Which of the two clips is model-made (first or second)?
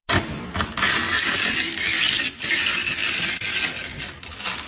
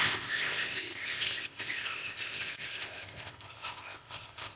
second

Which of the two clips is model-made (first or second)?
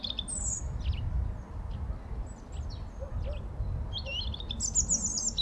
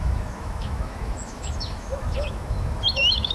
second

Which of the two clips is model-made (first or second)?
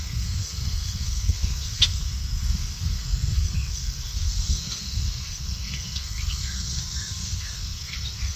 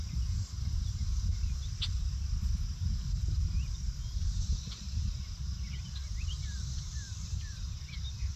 first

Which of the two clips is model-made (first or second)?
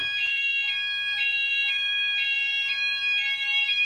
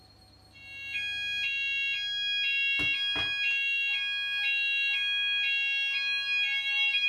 first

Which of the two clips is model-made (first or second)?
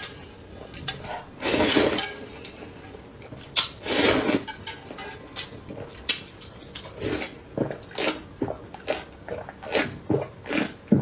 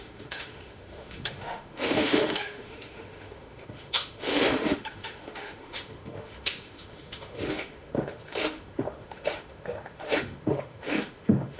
second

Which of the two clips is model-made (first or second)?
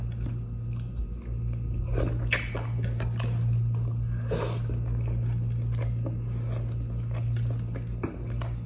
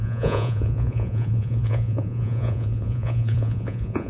second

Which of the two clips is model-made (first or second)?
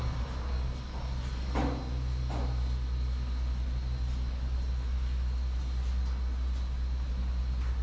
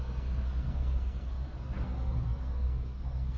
second